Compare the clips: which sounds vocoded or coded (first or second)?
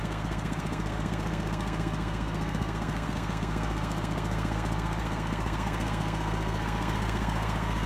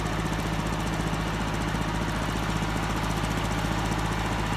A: first